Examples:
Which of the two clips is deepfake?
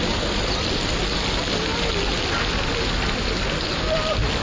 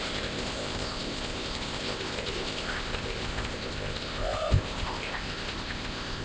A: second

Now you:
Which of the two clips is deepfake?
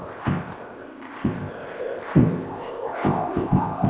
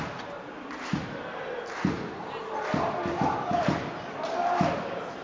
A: first